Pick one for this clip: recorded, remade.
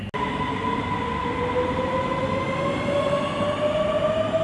recorded